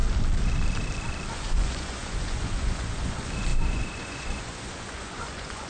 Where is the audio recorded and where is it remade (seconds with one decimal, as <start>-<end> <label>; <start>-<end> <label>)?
0.0-1.3 recorded; 1.3-5.7 remade